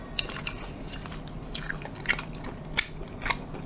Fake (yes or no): no